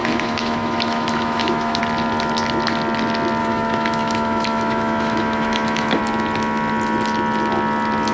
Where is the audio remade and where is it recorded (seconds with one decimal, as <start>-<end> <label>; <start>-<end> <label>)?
0.0-1.8 remade; 1.8-3.4 recorded; 3.4-6.0 remade; 6.0-8.1 recorded